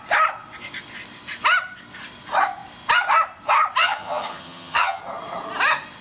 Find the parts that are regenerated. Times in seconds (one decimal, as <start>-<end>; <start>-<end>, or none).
3.8-5.0